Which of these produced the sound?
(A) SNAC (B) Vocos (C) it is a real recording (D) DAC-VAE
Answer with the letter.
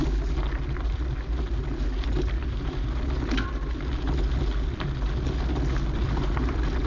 C